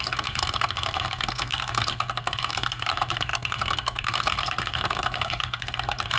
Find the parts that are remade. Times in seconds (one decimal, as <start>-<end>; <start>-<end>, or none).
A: 0.0-6.2